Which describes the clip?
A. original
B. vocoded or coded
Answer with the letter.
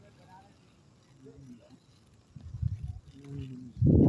A